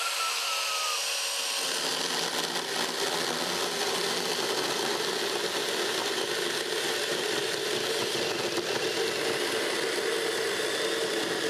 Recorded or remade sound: recorded